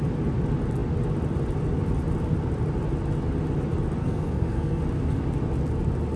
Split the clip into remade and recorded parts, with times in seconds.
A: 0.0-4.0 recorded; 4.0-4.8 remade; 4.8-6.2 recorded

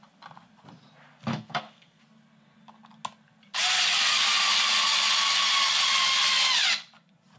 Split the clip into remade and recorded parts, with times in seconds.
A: 0.0-1.3 recorded; 1.3-2.0 remade; 2.0-7.4 recorded

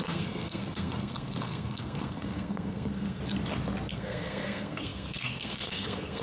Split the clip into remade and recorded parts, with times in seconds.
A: 0.0-3.2 remade; 3.2-3.9 recorded; 3.9-6.2 remade

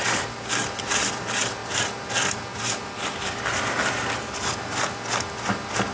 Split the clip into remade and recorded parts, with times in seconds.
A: 0.0-5.9 recorded

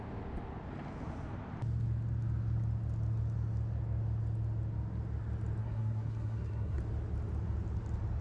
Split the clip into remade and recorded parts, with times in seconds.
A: 0.0-5.6 recorded; 5.6-6.8 remade; 6.8-8.2 recorded

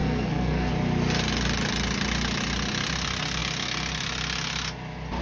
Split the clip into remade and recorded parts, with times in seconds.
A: 0.0-0.7 remade; 0.7-5.2 recorded

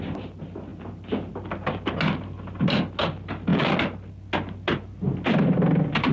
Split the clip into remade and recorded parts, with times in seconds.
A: 0.0-6.1 recorded

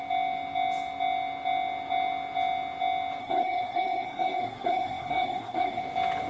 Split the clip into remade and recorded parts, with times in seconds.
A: 0.0-3.2 recorded; 3.2-5.8 remade; 5.8-6.3 recorded